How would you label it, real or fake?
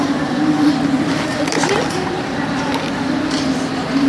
fake